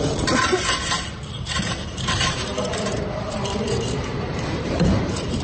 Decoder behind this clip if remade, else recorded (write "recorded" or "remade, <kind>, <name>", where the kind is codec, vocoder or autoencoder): remade, vocoder, BigVGAN v2